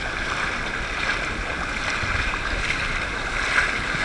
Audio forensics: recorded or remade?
recorded